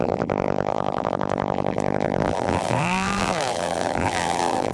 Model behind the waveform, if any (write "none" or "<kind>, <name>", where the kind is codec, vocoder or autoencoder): vocoder, BigVGAN v2